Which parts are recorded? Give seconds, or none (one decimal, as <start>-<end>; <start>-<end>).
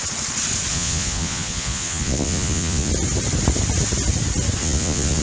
0.0-0.7; 2.9-4.6